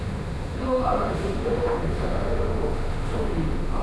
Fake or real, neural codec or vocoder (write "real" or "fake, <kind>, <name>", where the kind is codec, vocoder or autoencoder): fake, autoencoder, DAC-VAE